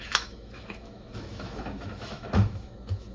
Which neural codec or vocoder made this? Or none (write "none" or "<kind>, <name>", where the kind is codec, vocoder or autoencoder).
autoencoder, DAC-VAE